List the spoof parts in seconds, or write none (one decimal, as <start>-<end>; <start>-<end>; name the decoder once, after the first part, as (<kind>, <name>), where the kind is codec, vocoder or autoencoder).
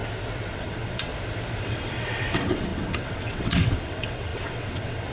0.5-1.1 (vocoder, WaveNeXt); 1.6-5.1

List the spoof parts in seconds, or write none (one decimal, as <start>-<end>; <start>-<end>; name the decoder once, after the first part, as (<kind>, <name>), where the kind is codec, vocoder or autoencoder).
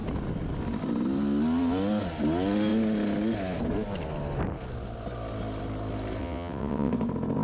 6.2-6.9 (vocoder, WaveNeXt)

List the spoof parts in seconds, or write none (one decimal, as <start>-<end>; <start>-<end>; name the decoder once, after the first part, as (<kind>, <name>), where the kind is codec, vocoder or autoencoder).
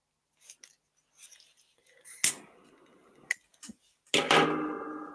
none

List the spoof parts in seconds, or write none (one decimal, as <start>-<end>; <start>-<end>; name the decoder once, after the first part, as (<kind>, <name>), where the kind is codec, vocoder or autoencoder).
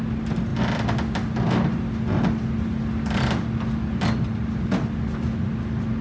none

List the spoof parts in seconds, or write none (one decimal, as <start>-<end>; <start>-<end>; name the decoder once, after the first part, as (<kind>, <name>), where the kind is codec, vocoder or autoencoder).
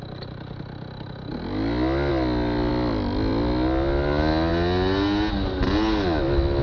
none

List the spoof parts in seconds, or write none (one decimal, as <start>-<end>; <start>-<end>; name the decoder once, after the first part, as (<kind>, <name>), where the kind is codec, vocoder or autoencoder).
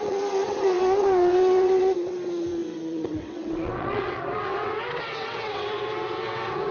0.0-6.7 (vocoder, WaveNeXt)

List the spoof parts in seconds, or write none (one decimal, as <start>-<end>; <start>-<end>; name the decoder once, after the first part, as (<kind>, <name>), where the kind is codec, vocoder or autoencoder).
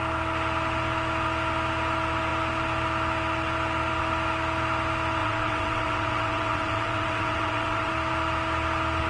5.2-7.9 (vocoder, WaveNeXt)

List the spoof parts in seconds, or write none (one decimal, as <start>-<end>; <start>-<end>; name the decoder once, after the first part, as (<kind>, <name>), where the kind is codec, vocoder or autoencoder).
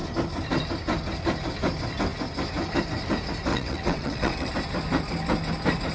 3.5-4.5 (vocoder, WaveNeXt)